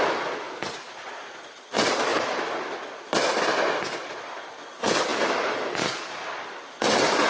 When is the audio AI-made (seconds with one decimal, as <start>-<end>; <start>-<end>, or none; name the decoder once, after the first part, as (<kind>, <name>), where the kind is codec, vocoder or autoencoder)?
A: none